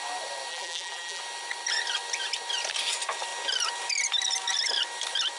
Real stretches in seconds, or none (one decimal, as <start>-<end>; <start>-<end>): 0.0-0.5; 1.2-5.4